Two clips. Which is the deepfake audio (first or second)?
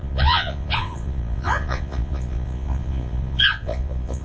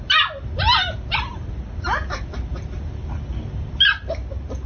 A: first